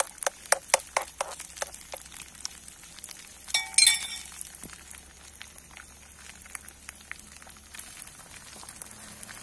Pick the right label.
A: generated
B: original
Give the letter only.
B